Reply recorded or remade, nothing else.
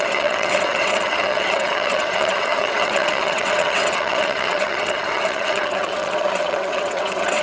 remade